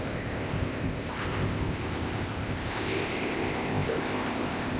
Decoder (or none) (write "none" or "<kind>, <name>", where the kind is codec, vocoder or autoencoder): codec, ZipCodec